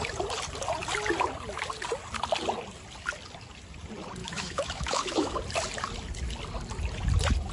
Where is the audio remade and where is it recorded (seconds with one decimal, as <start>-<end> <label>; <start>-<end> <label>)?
0.0-4.2 recorded; 4.2-5.4 remade; 5.4-7.5 recorded